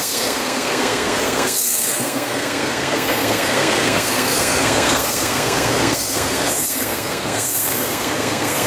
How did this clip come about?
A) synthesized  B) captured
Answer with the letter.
A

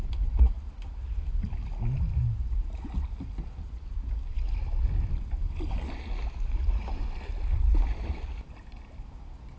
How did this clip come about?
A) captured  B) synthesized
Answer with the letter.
A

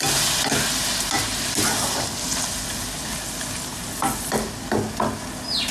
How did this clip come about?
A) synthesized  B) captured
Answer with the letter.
B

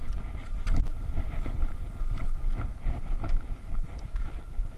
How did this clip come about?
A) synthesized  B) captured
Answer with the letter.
B